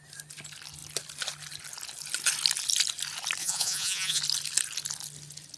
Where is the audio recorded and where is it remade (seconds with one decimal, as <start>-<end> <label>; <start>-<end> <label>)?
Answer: 0.0-3.4 recorded; 3.4-4.2 remade; 4.2-5.6 recorded

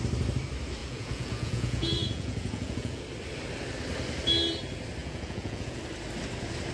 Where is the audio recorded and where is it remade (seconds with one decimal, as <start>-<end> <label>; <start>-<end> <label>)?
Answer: 0.0-0.8 recorded; 0.8-3.0 remade; 3.0-5.0 recorded; 5.0-5.8 remade; 5.8-6.7 recorded

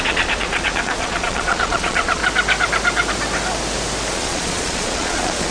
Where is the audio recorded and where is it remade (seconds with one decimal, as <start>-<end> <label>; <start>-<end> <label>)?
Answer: 0.0-2.2 remade; 2.2-4.1 recorded; 4.1-5.5 remade